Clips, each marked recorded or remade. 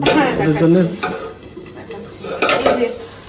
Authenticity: recorded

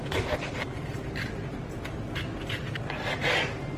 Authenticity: recorded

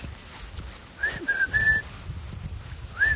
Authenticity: recorded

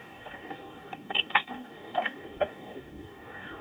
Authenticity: remade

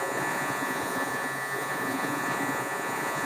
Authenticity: remade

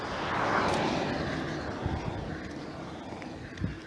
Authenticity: recorded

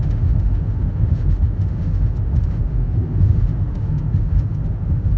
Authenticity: remade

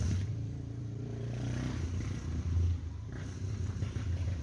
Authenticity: remade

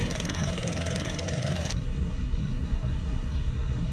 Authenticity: remade